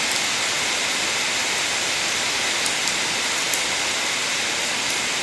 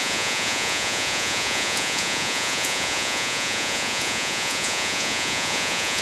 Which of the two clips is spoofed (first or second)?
second